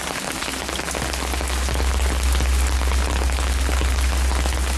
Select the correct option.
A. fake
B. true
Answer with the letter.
B